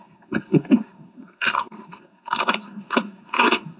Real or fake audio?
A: fake